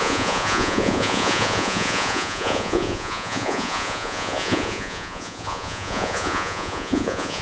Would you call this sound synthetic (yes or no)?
yes